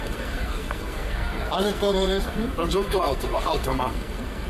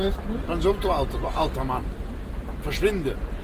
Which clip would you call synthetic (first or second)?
first